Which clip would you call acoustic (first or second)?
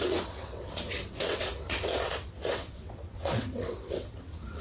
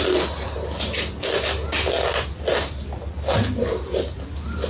second